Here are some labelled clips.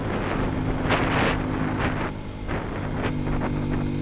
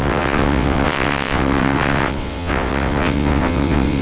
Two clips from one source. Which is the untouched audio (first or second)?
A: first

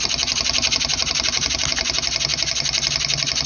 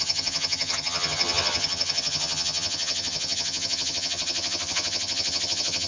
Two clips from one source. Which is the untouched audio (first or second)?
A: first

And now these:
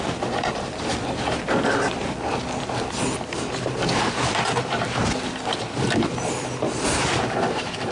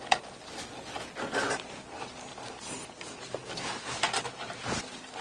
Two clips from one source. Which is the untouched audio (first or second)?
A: second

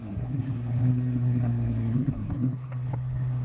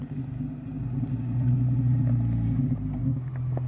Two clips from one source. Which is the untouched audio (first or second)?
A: second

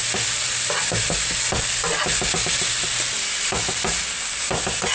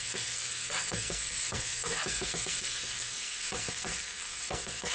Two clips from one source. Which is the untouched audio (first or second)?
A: first